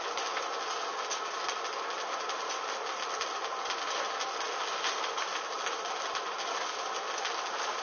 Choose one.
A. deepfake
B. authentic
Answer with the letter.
B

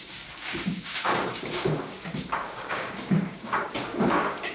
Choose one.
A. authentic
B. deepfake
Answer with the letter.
B